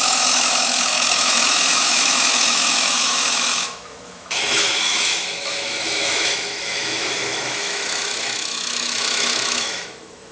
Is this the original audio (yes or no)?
no